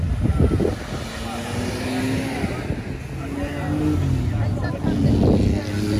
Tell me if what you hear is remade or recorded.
recorded